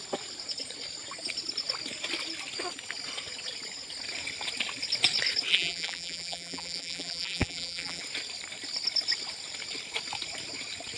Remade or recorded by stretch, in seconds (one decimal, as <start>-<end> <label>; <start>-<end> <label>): 0.0-5.5 recorded; 5.5-8.0 remade; 8.0-11.0 recorded